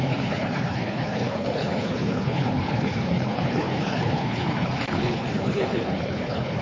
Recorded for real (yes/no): no